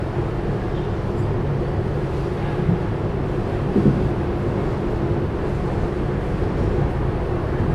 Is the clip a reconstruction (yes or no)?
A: no